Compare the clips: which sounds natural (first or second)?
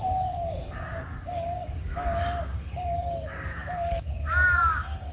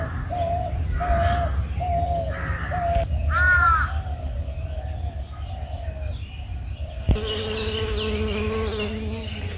second